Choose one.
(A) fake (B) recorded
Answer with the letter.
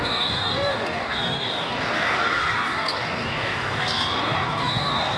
A